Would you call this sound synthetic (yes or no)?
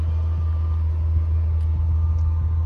no